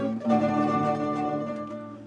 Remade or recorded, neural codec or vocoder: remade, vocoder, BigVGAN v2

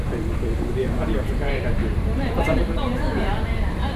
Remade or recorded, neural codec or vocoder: remade, vocoder, BigVGAN v2